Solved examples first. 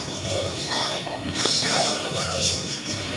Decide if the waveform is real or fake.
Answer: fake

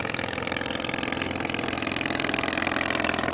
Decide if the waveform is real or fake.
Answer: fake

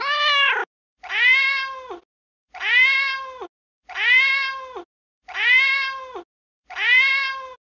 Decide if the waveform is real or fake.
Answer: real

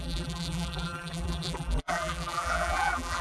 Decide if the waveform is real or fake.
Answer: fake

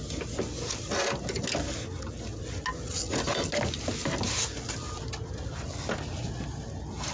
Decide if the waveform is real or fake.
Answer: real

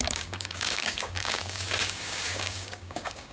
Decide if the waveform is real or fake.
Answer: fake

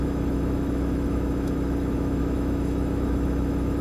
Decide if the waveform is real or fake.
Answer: fake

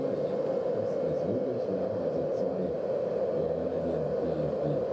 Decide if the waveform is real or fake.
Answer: real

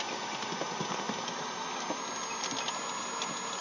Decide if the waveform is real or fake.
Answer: real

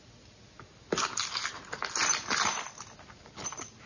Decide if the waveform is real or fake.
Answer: real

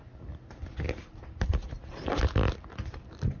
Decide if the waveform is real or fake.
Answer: real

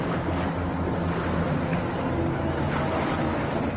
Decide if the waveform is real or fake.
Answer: real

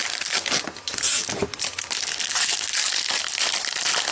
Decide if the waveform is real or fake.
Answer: fake